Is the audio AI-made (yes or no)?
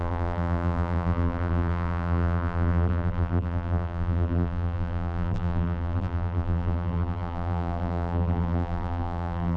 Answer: yes